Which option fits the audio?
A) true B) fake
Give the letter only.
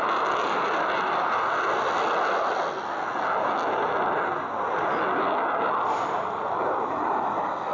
A